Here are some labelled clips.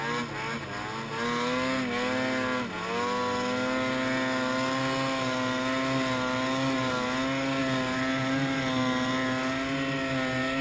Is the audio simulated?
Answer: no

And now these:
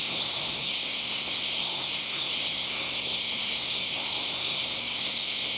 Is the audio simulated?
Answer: yes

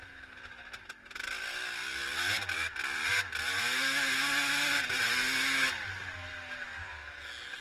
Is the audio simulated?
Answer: no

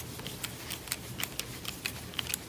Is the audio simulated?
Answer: no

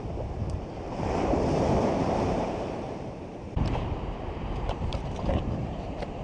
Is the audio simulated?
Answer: yes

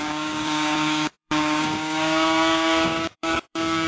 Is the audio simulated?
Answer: yes